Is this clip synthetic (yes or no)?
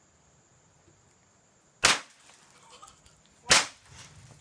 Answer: no